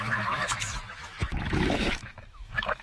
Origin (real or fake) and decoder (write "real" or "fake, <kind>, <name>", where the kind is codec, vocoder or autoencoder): fake, autoencoder, DAC-VAE